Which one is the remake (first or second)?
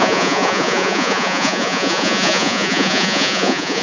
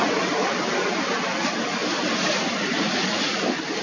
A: first